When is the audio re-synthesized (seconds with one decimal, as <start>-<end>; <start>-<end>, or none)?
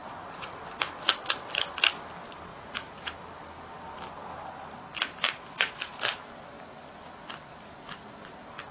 0.0-0.6; 2.5-3.1